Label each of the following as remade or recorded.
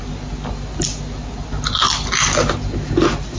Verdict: recorded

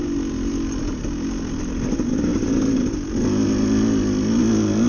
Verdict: recorded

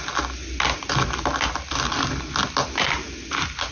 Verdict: recorded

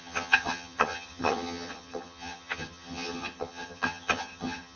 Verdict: remade